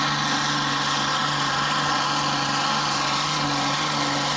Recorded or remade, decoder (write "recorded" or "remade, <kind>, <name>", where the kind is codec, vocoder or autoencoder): recorded